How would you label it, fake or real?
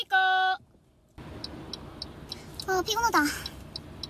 real